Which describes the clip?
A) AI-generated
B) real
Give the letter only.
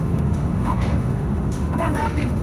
A